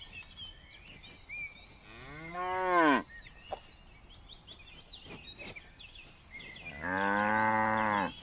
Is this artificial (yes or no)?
no